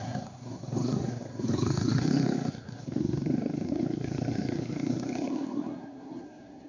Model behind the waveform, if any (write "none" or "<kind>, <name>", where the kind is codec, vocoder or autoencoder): codec, SNAC